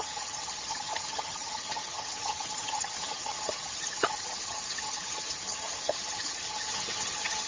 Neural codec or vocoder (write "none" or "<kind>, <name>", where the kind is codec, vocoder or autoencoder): vocoder, HiFi-GAN